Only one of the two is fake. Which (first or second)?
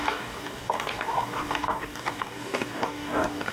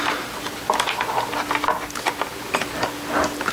first